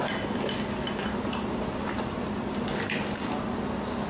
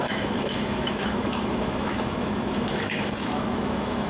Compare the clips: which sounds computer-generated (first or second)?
second